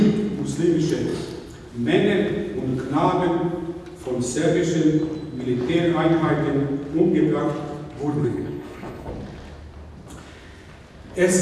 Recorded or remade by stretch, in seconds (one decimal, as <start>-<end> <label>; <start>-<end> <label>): 0.0-8.2 recorded; 8.2-9.1 remade; 9.1-11.4 recorded